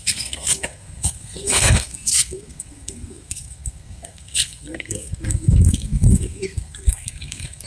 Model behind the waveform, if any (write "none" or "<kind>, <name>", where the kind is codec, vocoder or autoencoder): codec, SNAC